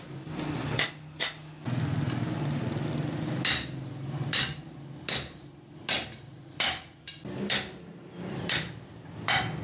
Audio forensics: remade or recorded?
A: recorded